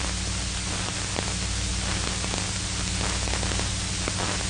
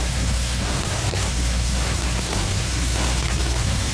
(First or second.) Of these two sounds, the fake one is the second